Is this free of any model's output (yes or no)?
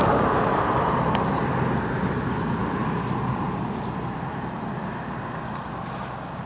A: yes